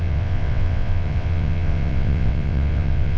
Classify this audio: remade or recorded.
remade